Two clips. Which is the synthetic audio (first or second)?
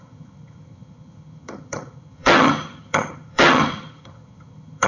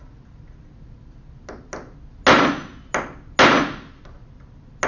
first